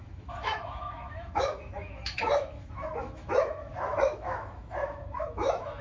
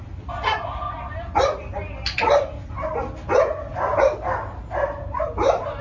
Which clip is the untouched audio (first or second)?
second